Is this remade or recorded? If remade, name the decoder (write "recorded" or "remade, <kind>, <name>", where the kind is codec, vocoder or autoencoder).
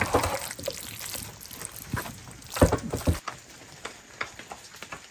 recorded